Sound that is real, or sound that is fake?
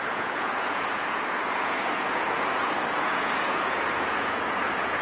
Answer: fake